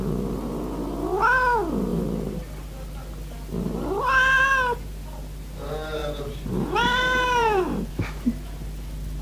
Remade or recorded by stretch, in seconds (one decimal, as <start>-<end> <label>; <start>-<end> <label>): 0.0-6.0 recorded; 6.0-7.9 remade; 7.9-9.2 recorded